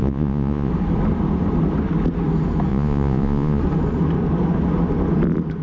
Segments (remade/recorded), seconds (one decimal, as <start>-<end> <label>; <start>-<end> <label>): 0.0-0.7 remade; 0.7-2.7 recorded; 2.7-3.6 remade; 3.6-5.6 recorded